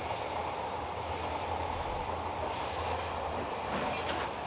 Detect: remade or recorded recorded